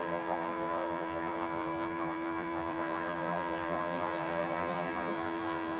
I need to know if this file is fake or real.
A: fake